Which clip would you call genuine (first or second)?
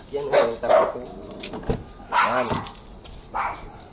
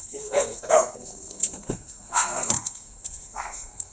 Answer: first